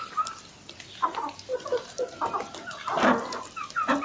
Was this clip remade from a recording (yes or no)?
no